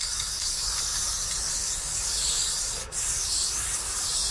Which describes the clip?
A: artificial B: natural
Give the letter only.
A